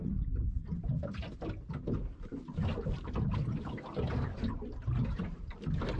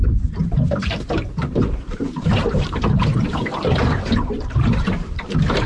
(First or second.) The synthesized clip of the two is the second